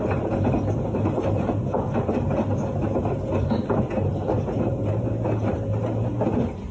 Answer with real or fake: real